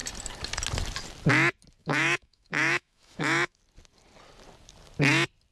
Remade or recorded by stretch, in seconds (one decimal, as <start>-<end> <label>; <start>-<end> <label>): 0.0-1.8 recorded; 1.8-3.6 remade; 3.6-5.5 recorded